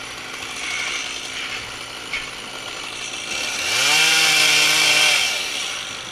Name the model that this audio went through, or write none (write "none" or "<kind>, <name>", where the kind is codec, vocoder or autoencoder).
none